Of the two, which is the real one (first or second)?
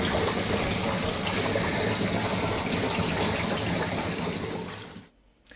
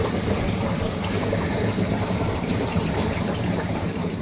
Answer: first